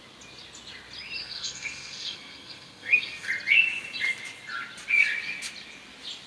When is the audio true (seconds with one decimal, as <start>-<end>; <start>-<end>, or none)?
0.0-1.2; 3.3-6.3